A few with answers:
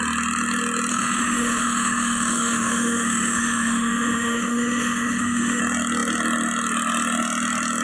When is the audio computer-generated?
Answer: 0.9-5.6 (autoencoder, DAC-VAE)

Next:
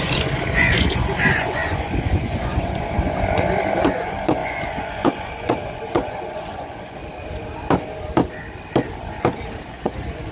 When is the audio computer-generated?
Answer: 0.0-7.0 (vocoder, Vocos); 9.7-10.3

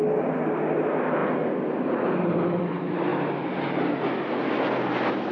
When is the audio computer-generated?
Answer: none

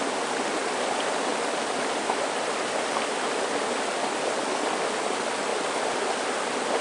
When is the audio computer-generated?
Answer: 0.6-4.2 (vocoder, BigVGAN v2)

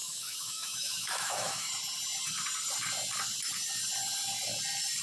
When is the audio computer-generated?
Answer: 0.0-1.7 (autoencoder, DAC-VAE)

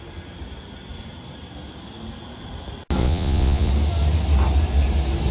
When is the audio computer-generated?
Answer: 3.0-3.7 (vocoder, Vocos)